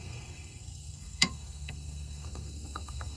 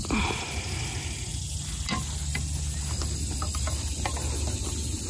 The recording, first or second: second